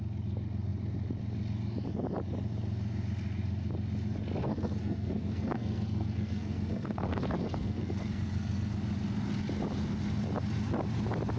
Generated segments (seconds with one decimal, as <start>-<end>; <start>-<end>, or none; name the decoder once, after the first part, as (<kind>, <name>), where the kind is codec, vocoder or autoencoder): 4.4-8.7 (codec, SNAC)